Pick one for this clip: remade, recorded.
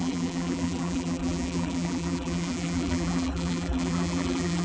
remade